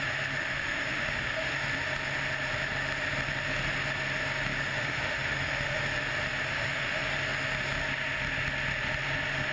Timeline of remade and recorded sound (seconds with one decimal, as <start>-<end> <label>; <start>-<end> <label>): 0.0-0.4 recorded; 0.4-1.5 remade; 1.5-4.6 recorded; 4.6-5.8 remade; 5.8-6.4 recorded; 6.4-7.0 remade; 7.0-9.5 recorded